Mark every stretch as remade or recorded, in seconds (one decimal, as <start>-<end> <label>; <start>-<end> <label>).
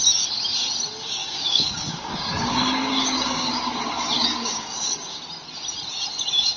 0.0-1.2 recorded; 1.2-5.2 remade; 5.2-6.6 recorded